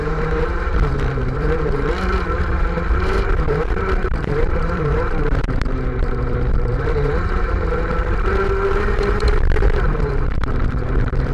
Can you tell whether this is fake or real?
fake